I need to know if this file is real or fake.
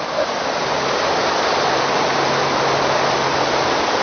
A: real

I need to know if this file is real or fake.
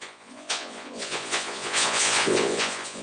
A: fake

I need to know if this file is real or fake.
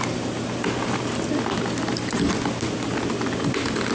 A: real